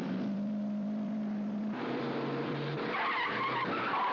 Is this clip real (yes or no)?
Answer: no